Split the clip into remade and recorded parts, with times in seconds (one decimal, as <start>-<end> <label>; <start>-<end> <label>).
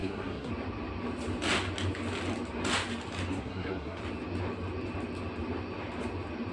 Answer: 0.0-0.5 remade; 0.5-3.3 recorded; 3.3-4.0 remade; 4.0-6.5 recorded